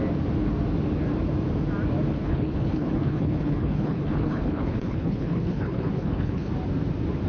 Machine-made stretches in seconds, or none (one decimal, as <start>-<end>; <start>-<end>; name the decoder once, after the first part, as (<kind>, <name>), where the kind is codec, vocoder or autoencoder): 2.1-6.5 (codec, HILCodec)